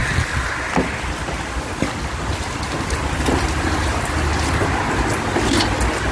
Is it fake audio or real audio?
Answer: real